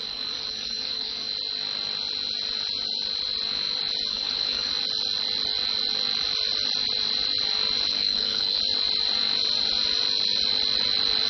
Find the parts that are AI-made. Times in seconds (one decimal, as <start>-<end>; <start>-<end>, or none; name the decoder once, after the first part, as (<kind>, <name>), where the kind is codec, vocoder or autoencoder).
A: 0.0-1.3 (codec, DAC); 4.1-4.7; 7.9-8.6

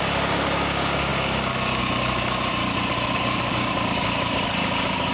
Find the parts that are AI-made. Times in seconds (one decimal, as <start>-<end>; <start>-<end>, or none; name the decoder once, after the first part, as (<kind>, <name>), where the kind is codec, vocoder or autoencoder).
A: 0.0-2.6 (codec, DAC); 3.1-5.1

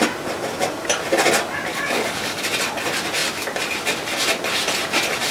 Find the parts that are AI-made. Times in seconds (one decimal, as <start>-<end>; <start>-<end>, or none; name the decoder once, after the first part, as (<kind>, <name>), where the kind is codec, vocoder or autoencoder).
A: 1.7-2.4 (codec, DAC)

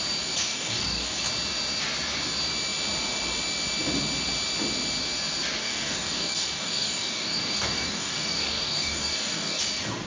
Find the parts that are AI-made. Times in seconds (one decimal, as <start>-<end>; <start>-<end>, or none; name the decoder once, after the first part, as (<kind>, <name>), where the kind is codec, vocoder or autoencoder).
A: 0.5-1.2 (codec, DAC); 5.6-9.6

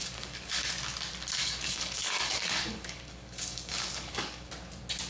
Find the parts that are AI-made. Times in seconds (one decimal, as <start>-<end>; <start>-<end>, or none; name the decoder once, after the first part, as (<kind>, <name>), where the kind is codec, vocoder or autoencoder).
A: 0.0-0.7 (codec, DAC); 1.4-4.5

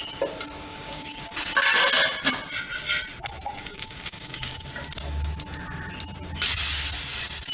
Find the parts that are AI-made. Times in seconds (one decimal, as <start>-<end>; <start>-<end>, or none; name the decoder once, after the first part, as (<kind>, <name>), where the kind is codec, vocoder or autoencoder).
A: 0.7-1.2 (codec, DAC); 3.6-4.7

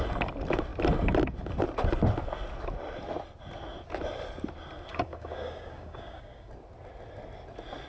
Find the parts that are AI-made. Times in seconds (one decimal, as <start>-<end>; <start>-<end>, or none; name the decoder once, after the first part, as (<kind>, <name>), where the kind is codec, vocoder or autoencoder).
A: 4.9-6.5 (codec, DAC)